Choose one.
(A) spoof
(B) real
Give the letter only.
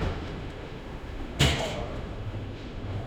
A